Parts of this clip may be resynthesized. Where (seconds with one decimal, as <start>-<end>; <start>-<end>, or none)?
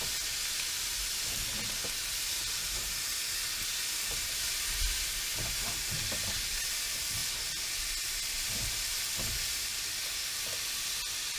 5.3-6.7